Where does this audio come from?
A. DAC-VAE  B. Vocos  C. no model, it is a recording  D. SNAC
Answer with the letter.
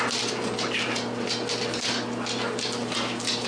C